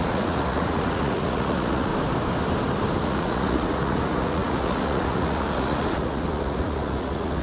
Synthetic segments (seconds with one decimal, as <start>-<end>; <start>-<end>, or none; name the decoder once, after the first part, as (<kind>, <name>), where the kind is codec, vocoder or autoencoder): 0.0-1.9 (vocoder, Vocos); 3.0-7.4